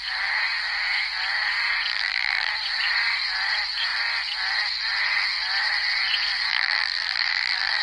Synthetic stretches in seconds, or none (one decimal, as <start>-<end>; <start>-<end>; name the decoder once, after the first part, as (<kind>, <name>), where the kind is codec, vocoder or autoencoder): 1.9-2.5 (vocoder, BigVGAN v2); 6.5-7.8